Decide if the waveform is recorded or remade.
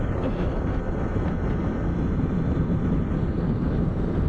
remade